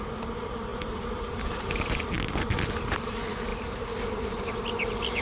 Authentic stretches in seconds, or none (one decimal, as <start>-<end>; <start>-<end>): 0.0-0.7; 2.9-3.5; 4.5-5.2